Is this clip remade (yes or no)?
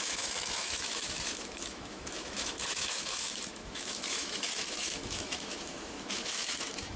yes